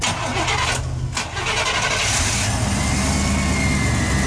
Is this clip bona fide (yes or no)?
yes